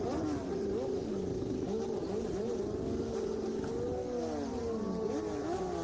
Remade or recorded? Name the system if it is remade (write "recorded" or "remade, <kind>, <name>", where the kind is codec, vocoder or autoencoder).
recorded